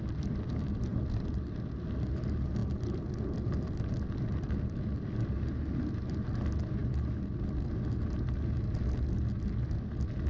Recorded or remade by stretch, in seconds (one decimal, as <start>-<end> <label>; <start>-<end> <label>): 0.0-10.3 recorded